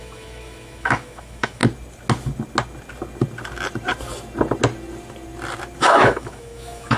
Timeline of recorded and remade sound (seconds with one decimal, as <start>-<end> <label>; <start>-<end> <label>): 0.0-1.6 remade; 1.6-5.8 recorded; 5.8-7.0 remade